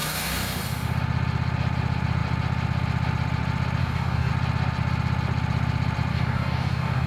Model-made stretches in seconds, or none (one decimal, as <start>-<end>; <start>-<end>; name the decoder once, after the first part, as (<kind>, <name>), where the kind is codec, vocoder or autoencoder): 0.0-0.6 (codec, DAC); 3.8-4.3; 6.1-7.1